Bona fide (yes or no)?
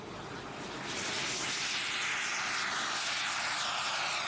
yes